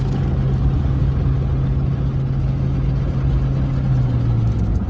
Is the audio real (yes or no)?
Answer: yes